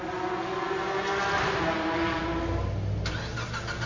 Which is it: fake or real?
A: real